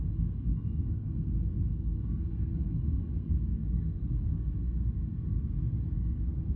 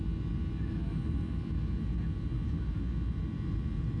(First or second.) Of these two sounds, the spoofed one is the first